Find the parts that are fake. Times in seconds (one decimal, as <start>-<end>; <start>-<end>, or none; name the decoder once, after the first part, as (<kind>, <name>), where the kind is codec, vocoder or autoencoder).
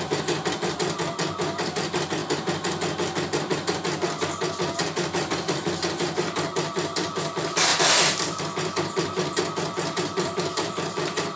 0.0-2.2 (vocoder, BigVGAN v2); 4.5-7.7; 8.4-11.4